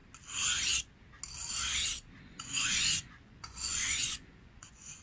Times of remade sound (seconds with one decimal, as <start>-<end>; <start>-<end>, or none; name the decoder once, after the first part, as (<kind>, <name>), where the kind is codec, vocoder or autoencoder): 2.2-5.0 (vocoder, Vocos)